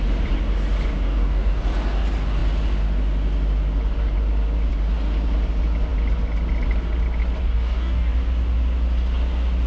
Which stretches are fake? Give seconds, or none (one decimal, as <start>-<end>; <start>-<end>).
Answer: 0.9-1.6; 7.4-8.1